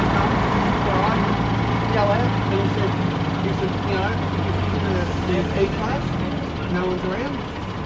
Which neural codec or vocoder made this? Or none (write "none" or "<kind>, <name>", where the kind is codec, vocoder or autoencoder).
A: none